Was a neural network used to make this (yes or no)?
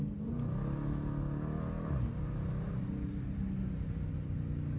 no